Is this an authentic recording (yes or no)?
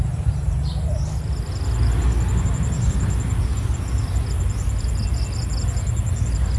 yes